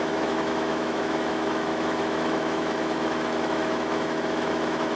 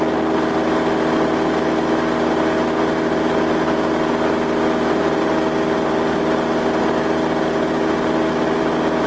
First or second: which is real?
second